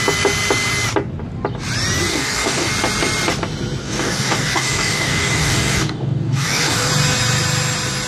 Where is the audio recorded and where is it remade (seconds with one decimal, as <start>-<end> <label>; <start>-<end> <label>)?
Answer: 0.0-2.1 recorded; 2.1-2.7 remade; 2.7-3.8 recorded; 3.8-6.9 remade; 6.9-8.1 recorded